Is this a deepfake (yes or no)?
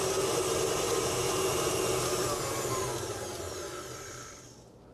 no